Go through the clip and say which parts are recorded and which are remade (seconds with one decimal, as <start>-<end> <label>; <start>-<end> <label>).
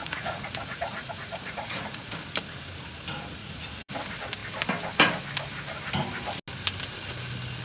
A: 0.0-2.1 remade; 2.1-3.4 recorded; 3.4-3.9 remade; 3.9-7.6 recorded